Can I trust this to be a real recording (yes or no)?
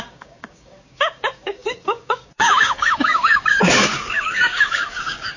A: no